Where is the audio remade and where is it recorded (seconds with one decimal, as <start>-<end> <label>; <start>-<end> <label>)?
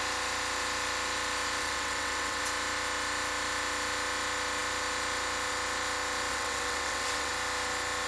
0.0-1.6 recorded; 1.6-2.4 remade; 2.4-6.3 recorded; 6.3-7.3 remade; 7.3-8.1 recorded